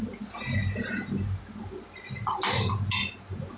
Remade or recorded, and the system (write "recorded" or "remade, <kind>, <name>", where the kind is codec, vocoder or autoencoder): recorded